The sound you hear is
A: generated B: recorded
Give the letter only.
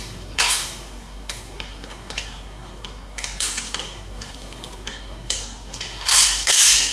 A